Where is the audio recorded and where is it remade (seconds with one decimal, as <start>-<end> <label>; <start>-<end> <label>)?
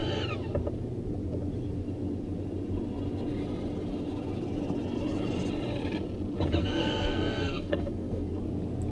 0.0-6.6 recorded; 6.6-8.4 remade; 8.4-8.9 recorded